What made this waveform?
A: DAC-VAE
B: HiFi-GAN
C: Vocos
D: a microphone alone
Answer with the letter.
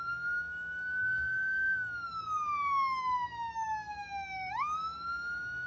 A